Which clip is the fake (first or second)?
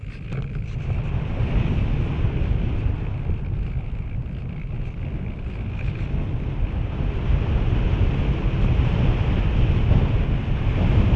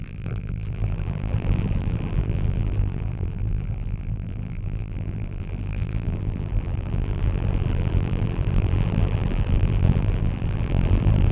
second